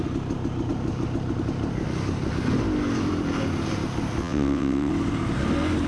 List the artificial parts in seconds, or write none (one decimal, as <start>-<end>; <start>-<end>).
4.2-4.9